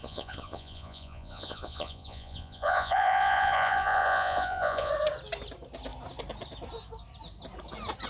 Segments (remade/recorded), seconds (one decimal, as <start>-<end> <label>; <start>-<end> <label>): 0.0-4.9 remade; 4.9-8.1 recorded